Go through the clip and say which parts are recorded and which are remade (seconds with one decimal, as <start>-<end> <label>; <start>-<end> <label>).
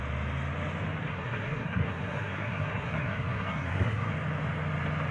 0.0-1.0 recorded; 1.0-4.1 remade; 4.1-5.1 recorded